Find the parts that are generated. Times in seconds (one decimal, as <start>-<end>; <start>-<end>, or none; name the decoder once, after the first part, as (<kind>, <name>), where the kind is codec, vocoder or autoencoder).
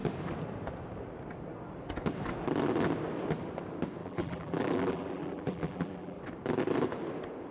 4.0-6.2 (vocoder, BigVGAN v2)